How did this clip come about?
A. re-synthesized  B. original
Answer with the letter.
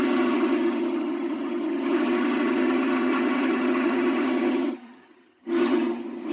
A